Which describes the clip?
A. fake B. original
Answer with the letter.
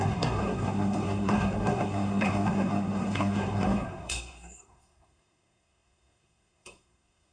A